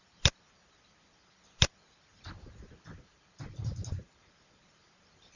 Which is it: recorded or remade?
recorded